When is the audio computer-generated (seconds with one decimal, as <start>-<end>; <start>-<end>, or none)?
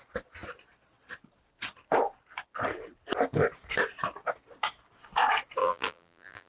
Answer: 5.6-6.5